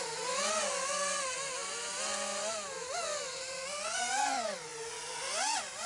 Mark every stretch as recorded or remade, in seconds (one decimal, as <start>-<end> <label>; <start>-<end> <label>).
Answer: 0.0-5.9 recorded